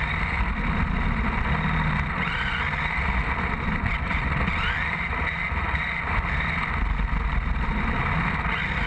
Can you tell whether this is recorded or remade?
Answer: recorded